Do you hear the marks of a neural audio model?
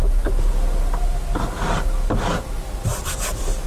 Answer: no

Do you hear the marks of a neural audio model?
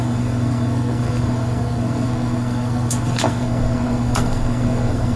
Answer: yes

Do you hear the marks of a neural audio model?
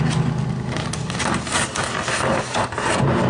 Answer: no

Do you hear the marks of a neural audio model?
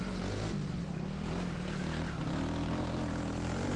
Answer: no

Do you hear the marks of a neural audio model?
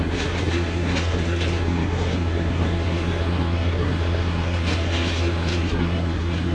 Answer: yes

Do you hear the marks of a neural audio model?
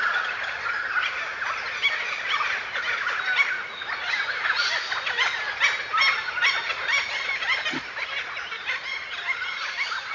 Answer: no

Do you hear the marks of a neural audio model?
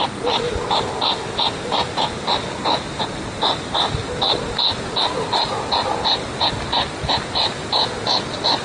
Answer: no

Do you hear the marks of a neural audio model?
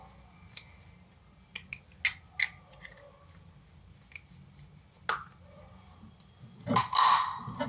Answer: no